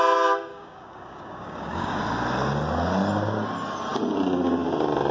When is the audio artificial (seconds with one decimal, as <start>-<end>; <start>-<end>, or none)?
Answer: 0.5-2.0